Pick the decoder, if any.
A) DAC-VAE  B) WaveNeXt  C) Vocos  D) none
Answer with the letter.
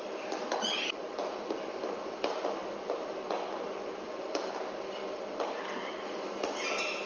D